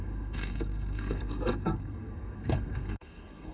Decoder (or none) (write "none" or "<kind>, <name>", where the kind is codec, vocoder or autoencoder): codec, SNAC